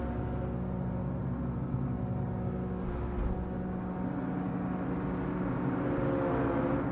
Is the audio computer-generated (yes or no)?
no